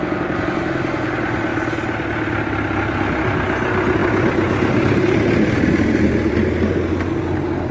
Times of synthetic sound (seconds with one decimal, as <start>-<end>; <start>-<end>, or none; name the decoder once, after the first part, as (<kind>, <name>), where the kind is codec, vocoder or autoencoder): none